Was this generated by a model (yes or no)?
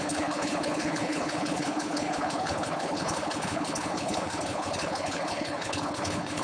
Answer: yes